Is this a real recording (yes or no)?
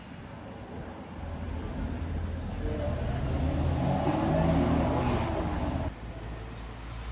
yes